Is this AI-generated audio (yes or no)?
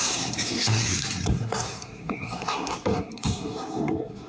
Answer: yes